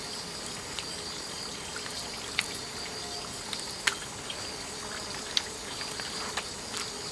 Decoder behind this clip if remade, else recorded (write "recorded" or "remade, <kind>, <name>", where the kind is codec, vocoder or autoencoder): recorded